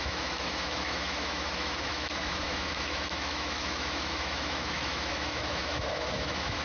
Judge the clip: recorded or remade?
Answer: remade